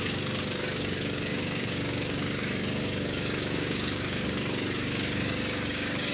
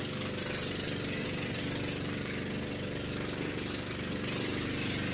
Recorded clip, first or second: second